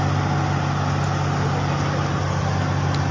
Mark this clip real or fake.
real